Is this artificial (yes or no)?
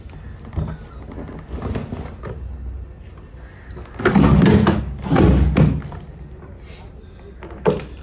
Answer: no